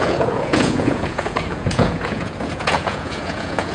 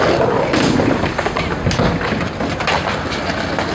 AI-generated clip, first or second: first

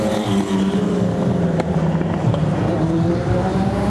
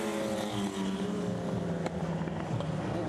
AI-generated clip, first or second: first